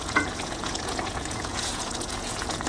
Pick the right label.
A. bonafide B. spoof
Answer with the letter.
B